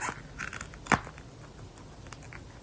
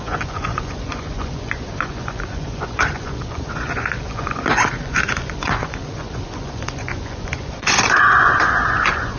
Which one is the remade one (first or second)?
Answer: second